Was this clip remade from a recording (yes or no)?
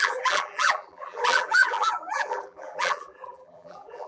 yes